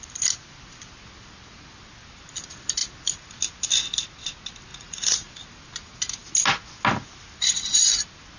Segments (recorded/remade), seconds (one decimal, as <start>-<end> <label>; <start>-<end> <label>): 0.0-4.7 recorded; 4.7-5.3 remade; 5.3-8.4 recorded